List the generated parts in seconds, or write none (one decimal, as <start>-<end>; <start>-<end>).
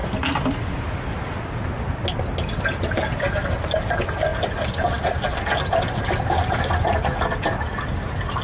0.0-0.9